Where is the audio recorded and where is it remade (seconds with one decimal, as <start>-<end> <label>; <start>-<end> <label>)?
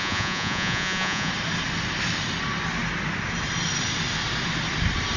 0.0-1.3 remade; 1.3-5.2 recorded